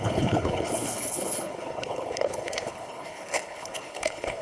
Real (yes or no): no